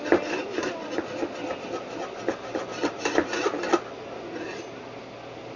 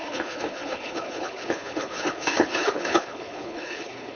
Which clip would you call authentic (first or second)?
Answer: first